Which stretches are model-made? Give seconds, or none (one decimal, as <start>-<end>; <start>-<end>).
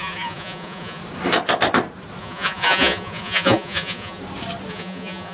0.0-1.0; 2.2-4.2; 4.7-5.3